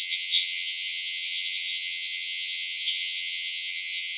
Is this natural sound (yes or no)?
no